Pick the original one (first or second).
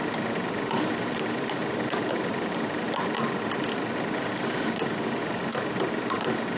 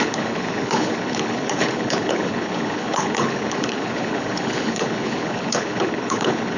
first